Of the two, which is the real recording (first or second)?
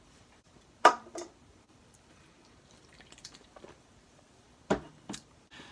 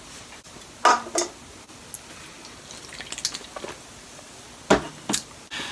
second